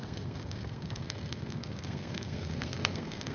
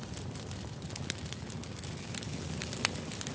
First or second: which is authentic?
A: second